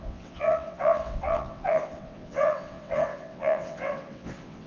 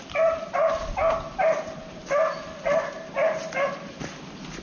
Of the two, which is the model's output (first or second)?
first